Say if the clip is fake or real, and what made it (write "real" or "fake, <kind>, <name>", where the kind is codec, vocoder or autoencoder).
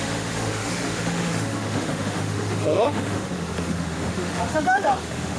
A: fake, autoencoder, DAC-VAE